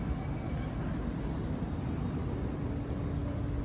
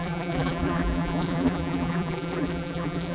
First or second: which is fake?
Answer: second